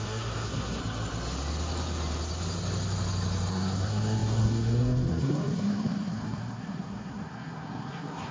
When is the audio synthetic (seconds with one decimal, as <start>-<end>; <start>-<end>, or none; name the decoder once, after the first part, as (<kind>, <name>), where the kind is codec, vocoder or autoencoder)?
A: 0.0-0.8 (codec, SNAC); 3.5-8.3